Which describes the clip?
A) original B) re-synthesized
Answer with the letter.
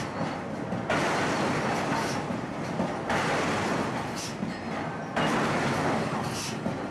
A